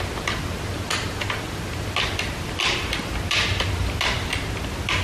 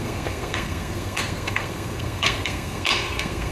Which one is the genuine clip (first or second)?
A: first